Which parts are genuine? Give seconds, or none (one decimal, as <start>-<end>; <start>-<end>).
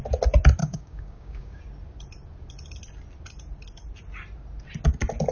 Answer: 0.0-0.6; 1.6-5.3